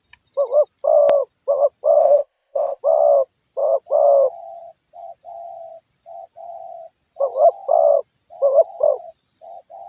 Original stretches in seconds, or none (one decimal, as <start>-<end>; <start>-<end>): 0.0-2.0; 2.8-9.9